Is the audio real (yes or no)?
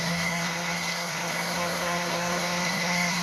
no